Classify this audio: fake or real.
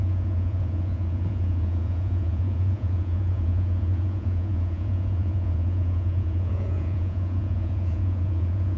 fake